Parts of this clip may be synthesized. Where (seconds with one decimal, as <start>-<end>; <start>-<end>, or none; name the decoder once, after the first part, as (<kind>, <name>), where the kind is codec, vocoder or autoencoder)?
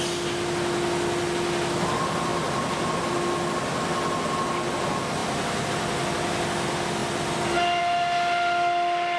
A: 2.3-3.0 (vocoder, BigVGAN v2)